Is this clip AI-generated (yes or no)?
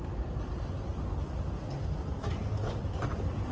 no